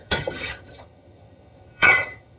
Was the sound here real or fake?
fake